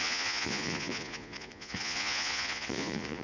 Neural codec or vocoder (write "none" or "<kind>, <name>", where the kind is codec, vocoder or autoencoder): vocoder, Vocos